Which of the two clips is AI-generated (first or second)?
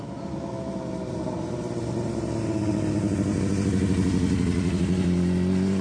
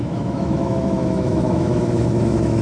second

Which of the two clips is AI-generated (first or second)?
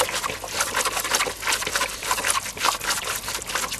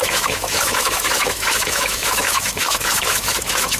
second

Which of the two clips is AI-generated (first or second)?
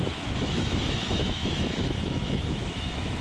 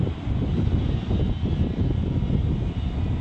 first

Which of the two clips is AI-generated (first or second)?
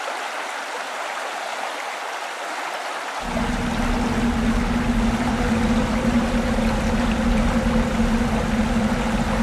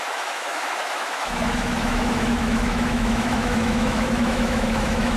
second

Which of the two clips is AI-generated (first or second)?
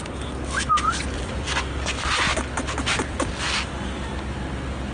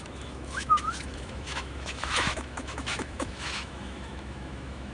second